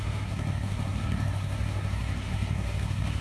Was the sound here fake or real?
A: fake